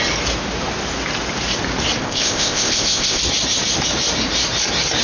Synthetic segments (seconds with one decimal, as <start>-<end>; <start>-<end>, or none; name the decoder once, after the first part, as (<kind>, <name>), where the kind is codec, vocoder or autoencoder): 2.0-3.2 (codec, ZipCodec)